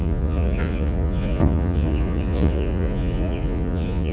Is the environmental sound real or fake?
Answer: fake